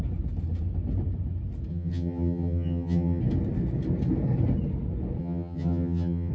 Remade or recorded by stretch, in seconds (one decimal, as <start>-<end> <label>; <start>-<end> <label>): 0.0-1.7 recorded; 1.7-3.2 remade; 3.2-5.2 recorded; 5.2-6.3 remade